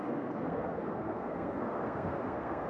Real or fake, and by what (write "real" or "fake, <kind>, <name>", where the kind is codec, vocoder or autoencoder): fake, codec, SNAC